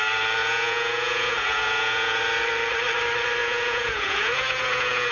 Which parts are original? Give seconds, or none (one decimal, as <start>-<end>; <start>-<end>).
0.0-0.4; 2.2-3.4